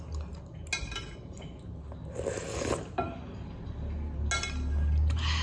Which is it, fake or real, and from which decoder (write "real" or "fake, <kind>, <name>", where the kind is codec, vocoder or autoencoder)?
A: real